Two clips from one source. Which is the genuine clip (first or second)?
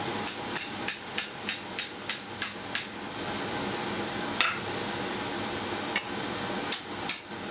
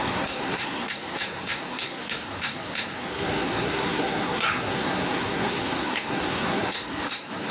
first